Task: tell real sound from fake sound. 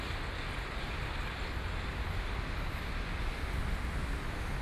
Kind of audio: real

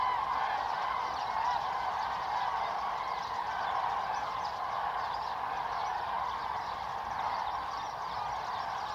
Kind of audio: real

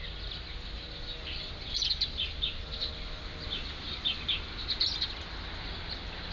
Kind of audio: real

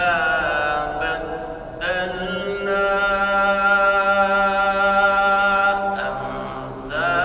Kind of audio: real